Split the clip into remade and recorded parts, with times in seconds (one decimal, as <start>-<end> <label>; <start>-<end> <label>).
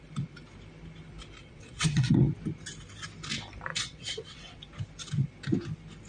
0.0-1.4 recorded; 1.4-2.3 remade; 2.3-3.7 recorded; 3.7-4.6 remade; 4.6-6.1 recorded